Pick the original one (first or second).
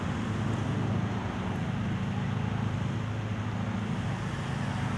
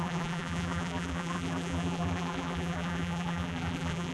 first